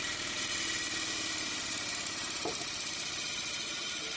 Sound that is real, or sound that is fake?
fake